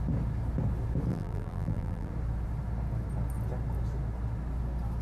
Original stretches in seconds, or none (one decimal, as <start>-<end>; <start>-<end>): 0.0-1.1; 2.1-5.0